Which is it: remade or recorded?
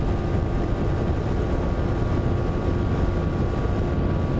recorded